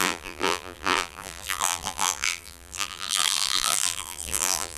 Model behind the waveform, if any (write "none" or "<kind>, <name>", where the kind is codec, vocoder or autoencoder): vocoder, BigVGAN v2